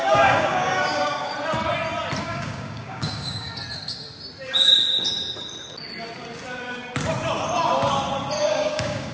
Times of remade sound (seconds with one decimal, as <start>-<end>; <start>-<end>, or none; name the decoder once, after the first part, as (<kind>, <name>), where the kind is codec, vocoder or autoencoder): 0.0-1.3 (codec, DAC); 2.2-3.6; 8.4-9.1